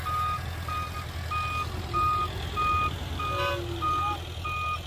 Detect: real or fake real